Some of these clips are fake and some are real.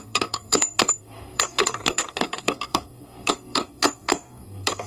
fake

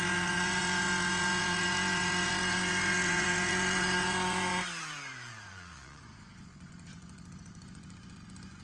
fake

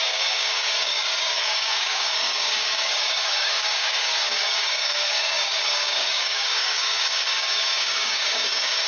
fake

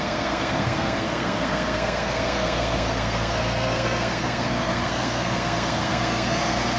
fake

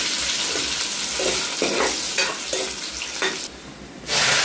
real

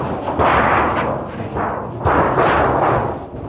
real